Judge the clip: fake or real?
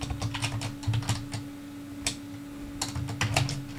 real